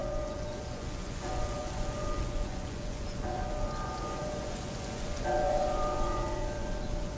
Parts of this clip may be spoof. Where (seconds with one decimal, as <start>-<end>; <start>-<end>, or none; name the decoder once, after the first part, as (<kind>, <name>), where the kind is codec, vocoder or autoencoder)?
0.0-7.2 (vocoder, Vocos)